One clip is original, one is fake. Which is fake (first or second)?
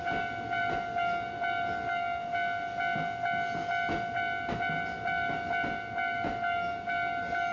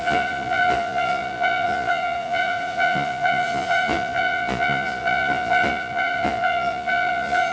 second